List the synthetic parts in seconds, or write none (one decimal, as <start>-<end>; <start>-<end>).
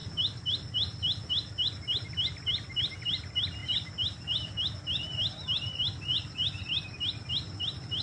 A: none